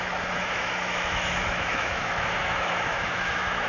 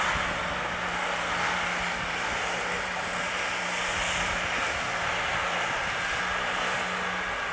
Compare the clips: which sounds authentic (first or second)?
second